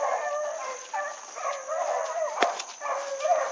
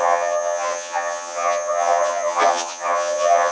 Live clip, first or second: first